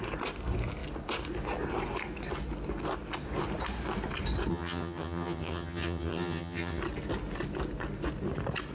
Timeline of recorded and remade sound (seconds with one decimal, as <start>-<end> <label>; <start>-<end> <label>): 0.0-4.5 recorded; 4.5-6.8 remade; 6.8-8.7 recorded